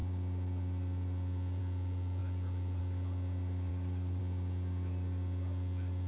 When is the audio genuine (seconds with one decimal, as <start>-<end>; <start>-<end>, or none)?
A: 0.0-3.7; 4.2-6.1